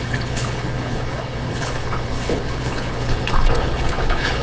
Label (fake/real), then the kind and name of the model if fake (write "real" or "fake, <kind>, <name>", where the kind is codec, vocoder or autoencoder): fake, codec, HILCodec